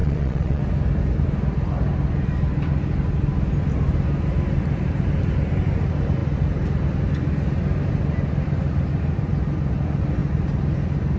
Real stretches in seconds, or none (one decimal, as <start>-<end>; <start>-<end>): 0.6-11.2